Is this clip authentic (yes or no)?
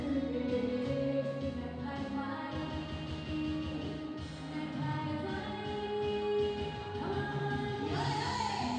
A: yes